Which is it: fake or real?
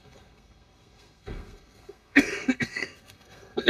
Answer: fake